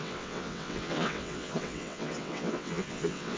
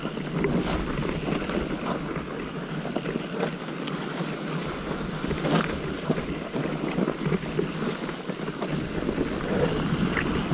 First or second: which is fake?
first